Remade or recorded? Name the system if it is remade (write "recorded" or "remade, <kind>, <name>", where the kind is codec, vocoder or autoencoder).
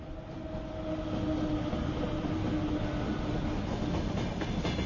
recorded